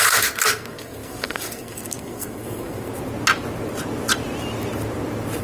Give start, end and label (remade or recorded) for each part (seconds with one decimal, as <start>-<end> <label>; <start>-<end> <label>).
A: 0.0-2.9 remade; 2.9-5.4 recorded